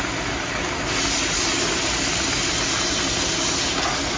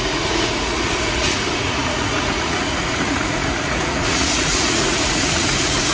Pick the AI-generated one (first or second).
second